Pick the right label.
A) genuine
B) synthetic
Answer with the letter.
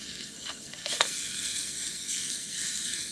B